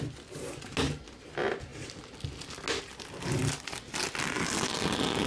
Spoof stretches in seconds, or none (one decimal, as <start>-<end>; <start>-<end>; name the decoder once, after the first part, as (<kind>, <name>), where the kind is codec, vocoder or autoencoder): none